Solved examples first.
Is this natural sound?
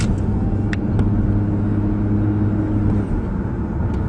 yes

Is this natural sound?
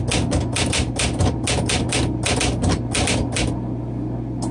yes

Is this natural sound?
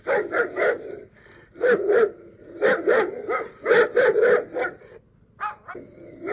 yes